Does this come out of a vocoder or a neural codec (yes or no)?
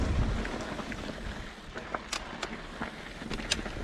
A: no